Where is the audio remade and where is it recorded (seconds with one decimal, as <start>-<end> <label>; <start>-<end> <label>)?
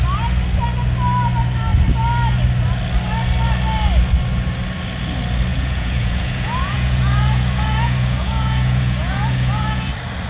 0.0-5.5 recorded; 5.5-9.9 remade; 9.9-10.3 recorded